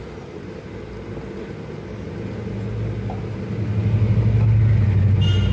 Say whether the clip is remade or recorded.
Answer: recorded